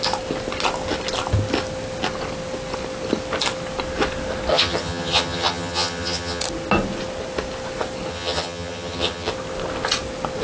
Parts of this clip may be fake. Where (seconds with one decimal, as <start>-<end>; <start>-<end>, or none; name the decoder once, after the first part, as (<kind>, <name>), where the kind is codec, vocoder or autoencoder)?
4.5-6.4 (vocoder, HiFi-GAN); 8.1-9.3